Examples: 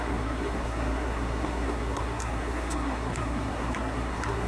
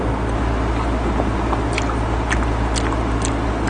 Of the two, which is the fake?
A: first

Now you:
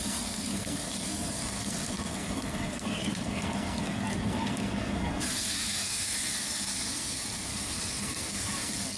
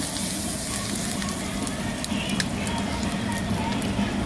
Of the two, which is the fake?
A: first